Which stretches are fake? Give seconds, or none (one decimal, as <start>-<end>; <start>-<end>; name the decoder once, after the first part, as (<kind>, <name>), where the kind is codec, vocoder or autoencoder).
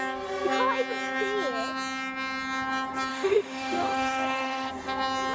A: 3.1-4.7 (autoencoder, DAC-VAE)